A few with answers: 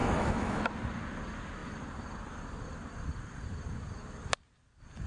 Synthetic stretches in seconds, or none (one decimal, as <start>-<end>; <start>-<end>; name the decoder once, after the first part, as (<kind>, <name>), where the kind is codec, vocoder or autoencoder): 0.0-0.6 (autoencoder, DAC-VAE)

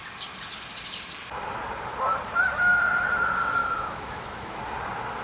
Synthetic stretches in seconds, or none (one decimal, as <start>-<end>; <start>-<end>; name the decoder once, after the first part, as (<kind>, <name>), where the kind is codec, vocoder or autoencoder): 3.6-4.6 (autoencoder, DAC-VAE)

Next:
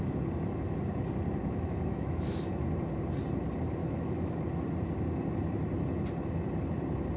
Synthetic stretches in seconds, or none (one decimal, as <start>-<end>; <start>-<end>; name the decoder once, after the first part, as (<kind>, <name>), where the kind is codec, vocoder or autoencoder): 1.4-2.5 (autoencoder, DAC-VAE); 3.8-4.4